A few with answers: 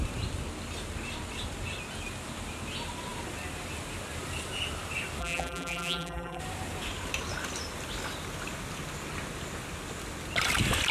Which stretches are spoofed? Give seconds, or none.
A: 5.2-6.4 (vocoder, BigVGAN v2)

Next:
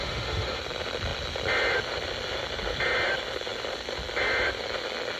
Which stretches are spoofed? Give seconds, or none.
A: 0.0-0.6 (autoencoder, DAC-VAE)